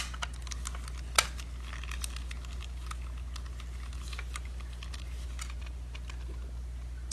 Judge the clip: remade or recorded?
recorded